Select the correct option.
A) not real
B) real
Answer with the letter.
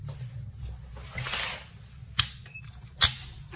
B